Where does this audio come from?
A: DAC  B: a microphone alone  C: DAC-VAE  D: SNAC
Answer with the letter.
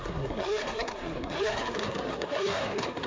D